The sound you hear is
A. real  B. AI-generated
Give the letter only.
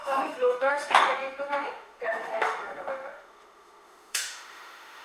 B